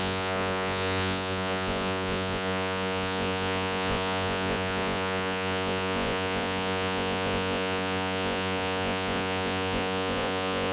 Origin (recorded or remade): remade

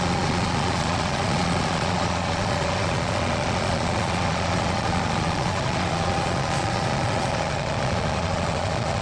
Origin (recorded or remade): remade